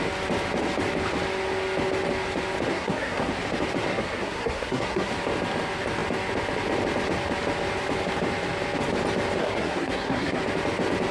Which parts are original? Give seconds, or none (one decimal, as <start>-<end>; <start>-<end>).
0.0-2.7; 3.3-3.9; 5.1-9.4; 10.4-11.1